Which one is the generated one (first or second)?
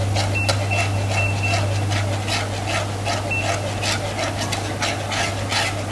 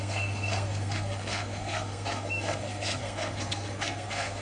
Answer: second